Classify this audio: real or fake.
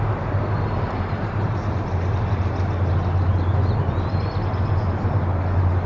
real